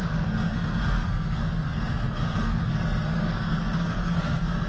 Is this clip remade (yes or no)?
yes